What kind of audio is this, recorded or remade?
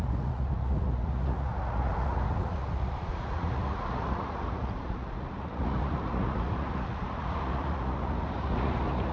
remade